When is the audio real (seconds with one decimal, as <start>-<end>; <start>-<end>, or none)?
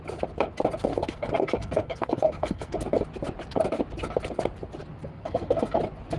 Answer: 0.0-0.9; 2.8-5.0; 5.8-6.2